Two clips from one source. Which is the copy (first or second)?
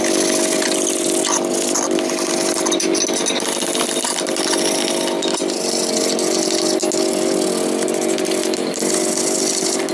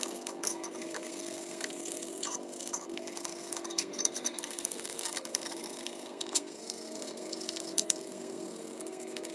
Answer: second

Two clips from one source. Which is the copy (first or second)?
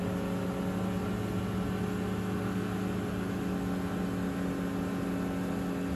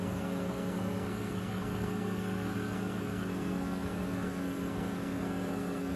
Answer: second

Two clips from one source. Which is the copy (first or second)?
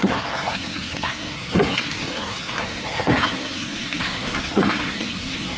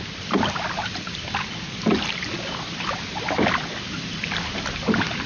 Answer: first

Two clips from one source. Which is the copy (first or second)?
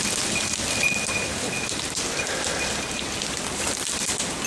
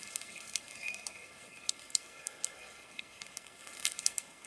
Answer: second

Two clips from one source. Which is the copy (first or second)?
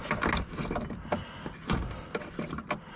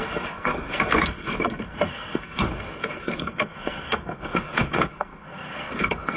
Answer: second